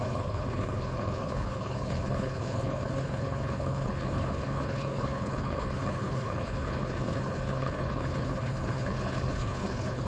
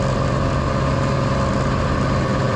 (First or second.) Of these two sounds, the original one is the second